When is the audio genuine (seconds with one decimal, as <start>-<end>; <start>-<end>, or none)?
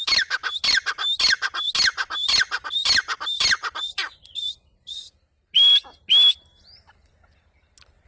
0.0-0.4; 4.7-8.1